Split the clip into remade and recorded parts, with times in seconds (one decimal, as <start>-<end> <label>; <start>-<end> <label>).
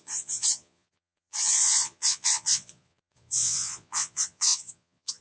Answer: 0.0-5.2 remade